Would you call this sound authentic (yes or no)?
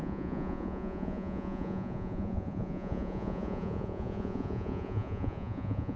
no